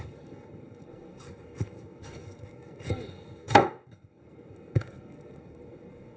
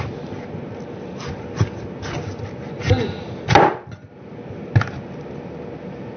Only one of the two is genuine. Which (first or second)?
second